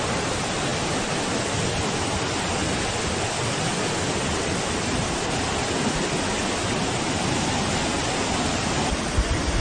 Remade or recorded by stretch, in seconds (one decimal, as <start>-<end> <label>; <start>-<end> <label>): 0.0-0.7 recorded; 0.7-1.3 remade; 1.3-9.6 recorded